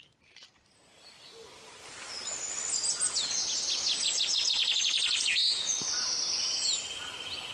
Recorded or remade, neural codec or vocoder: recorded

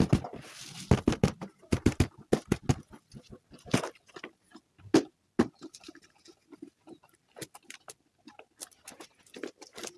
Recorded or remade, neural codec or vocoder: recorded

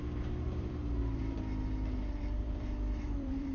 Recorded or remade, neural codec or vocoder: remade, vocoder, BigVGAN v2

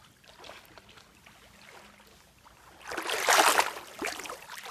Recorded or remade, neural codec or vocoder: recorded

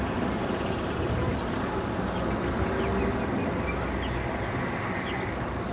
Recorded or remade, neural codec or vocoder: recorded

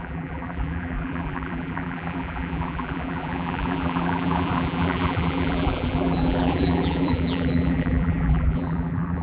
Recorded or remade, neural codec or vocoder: remade, vocoder, BigVGAN v2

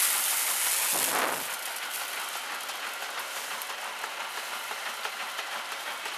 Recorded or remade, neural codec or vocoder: recorded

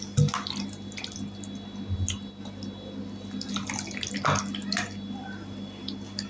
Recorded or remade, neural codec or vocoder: recorded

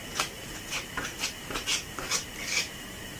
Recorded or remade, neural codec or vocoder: recorded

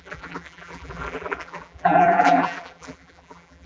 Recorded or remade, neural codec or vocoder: remade, vocoder, BigVGAN v2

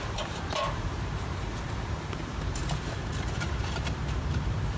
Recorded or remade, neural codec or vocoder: remade, vocoder, BigVGAN v2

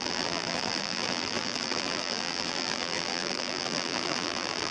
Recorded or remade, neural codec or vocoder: remade, vocoder, BigVGAN v2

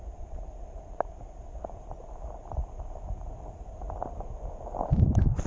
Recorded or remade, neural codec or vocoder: recorded